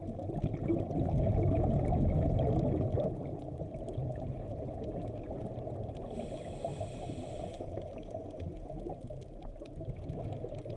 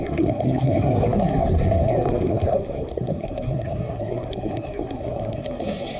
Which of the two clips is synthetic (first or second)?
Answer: second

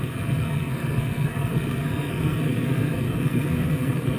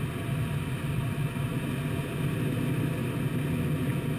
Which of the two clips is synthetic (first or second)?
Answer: first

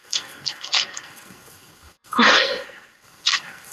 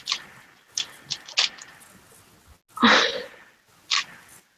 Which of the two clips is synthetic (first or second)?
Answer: first